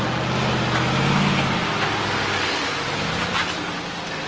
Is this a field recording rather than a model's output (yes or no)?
yes